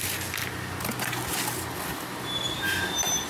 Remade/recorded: recorded